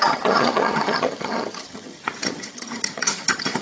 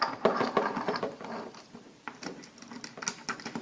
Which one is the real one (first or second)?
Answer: second